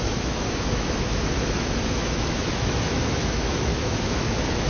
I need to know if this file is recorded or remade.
remade